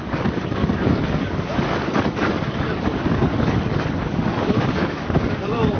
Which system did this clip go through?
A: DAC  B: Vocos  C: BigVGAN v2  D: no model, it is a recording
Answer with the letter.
A